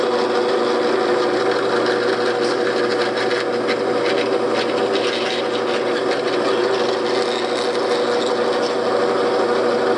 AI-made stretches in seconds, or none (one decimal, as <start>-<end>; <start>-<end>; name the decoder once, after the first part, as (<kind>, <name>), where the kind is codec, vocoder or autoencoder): none